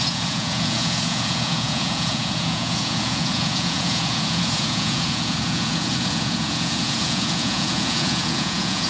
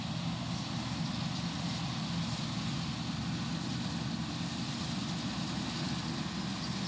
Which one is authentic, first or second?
second